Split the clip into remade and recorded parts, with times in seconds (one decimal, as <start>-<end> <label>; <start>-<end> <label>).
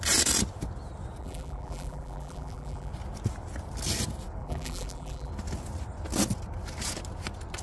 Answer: 0.0-1.2 recorded; 1.2-2.9 remade; 2.9-4.4 recorded; 4.4-5.3 remade; 5.3-7.6 recorded